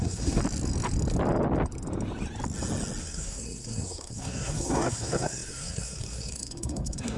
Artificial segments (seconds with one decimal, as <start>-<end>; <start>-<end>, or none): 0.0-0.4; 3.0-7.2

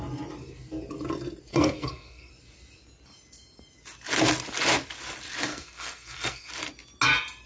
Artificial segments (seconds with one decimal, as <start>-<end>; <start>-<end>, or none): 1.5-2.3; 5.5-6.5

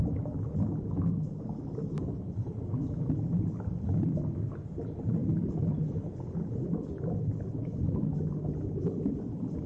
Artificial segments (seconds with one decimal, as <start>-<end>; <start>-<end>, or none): none

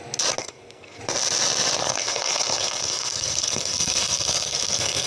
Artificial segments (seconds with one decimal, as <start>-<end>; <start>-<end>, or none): 0.4-1.0; 1.8-5.1

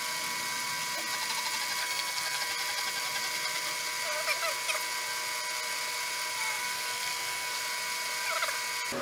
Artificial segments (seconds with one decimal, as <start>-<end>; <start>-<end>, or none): 1.8-2.4; 6.6-7.6

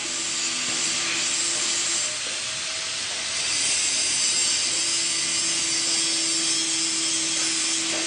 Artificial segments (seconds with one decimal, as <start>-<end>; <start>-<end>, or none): none

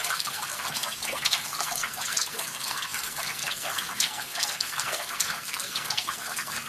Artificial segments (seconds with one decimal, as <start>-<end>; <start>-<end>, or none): 0.0-6.7

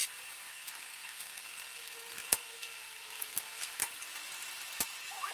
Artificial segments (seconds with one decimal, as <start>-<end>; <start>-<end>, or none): 0.5-3.8